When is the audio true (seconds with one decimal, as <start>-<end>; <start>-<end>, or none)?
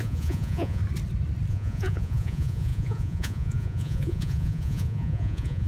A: 0.8-1.5